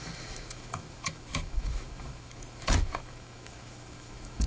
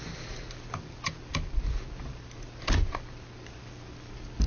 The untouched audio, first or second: second